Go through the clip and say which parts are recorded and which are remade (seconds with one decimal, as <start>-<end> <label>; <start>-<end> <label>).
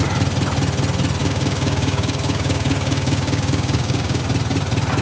0.0-1.2 recorded; 1.2-4.2 remade; 4.2-5.0 recorded